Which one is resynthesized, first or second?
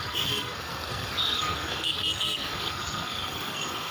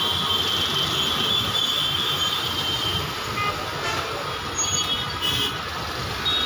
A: first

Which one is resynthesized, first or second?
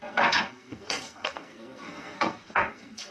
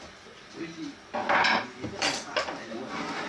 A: first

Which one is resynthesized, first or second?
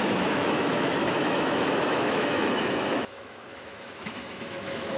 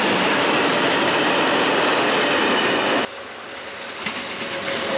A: first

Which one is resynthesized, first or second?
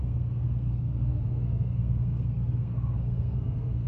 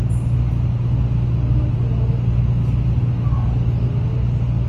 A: first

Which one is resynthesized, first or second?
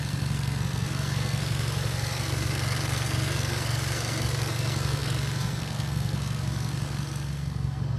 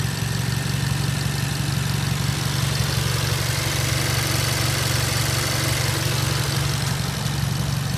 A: first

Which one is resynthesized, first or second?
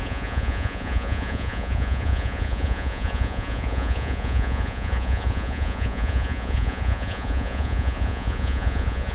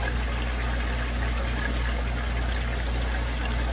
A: first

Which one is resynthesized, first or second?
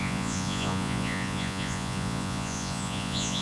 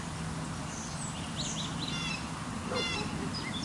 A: first